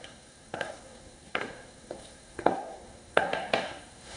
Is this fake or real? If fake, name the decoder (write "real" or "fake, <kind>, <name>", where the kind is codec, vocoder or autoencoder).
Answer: fake, codec, SNAC